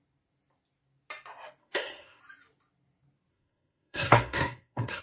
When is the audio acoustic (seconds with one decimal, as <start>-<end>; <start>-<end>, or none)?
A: 0.0-1.6; 2.2-3.3